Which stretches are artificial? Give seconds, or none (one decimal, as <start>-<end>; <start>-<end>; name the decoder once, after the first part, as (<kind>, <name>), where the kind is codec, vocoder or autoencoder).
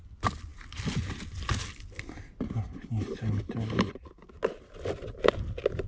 none